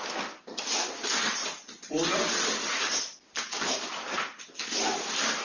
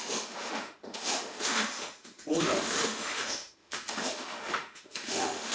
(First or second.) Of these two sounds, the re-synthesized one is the second